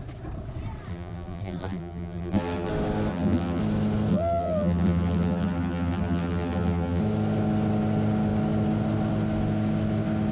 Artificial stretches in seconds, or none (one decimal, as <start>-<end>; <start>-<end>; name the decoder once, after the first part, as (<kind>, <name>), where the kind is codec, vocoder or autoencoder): 0.9-2.7 (vocoder, BigVGAN v2); 3.1-3.6; 4.1-7.0